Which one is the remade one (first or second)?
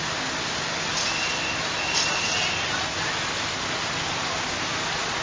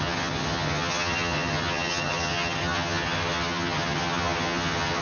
second